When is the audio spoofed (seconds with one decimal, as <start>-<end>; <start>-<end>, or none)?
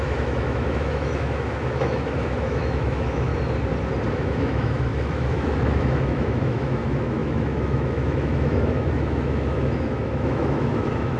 0.0-3.3; 4.1-11.2